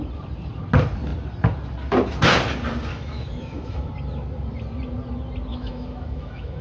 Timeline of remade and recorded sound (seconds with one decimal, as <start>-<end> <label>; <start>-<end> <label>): 0.0-2.9 recorded; 2.9-3.9 remade; 3.9-5.5 recorded; 5.5-6.6 remade